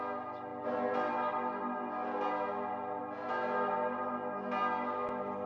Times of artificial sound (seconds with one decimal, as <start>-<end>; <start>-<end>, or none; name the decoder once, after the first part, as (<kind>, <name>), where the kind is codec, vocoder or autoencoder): none